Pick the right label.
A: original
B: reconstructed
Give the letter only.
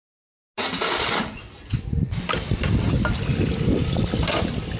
A